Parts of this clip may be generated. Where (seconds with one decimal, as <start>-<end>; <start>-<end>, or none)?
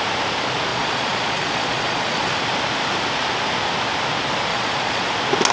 0.7-2.3; 4.5-5.1